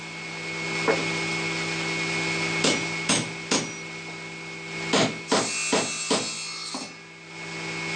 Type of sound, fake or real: real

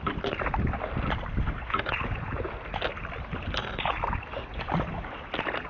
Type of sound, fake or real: real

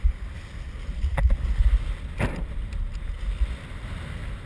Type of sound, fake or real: real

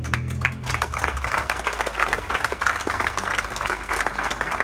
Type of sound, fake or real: fake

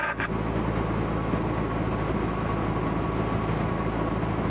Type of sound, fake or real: real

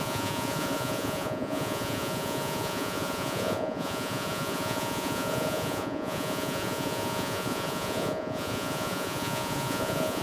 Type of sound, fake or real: fake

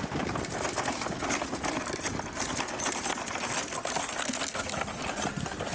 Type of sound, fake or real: real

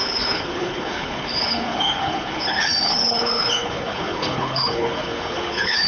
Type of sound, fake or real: fake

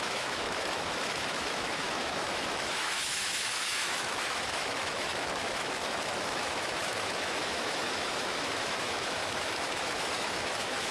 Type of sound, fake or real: fake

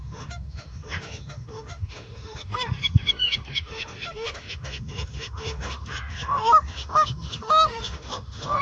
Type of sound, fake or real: fake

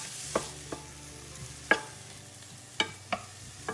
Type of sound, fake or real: real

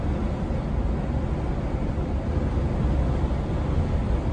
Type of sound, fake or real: real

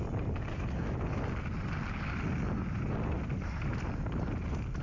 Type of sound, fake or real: real